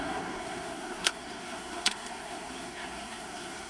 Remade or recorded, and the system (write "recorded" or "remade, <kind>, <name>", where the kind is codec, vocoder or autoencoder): remade, codec, SNAC